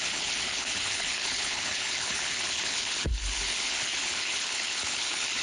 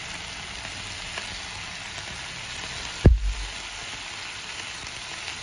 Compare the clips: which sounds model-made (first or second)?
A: first